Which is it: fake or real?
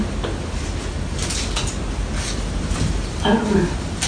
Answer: real